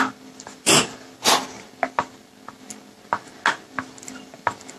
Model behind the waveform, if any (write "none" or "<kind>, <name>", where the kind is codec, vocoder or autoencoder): none